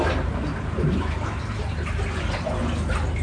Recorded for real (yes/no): yes